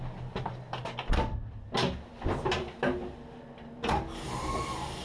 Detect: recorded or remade recorded